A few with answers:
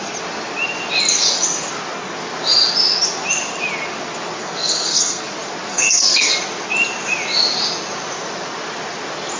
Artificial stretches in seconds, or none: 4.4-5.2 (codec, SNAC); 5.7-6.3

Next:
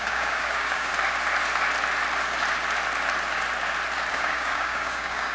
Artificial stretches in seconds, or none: 0.0-0.9 (codec, DAC); 4.1-5.3

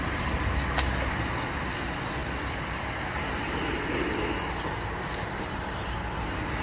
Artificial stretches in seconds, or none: none

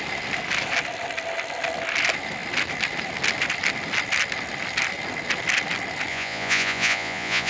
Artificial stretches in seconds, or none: 6.1-7.5 (vocoder, Vocos)

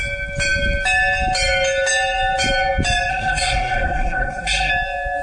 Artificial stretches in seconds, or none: 3.1-4.7 (codec, SNAC)